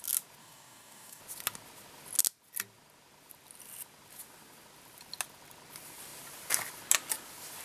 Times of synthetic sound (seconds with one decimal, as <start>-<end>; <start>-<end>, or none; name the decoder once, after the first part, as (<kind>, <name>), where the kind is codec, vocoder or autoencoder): 0.4-1.2 (codec, DAC)